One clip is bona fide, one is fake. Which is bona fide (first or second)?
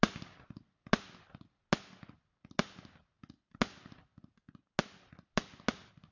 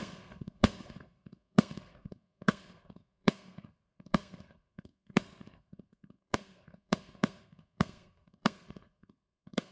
first